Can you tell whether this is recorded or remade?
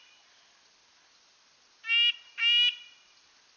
recorded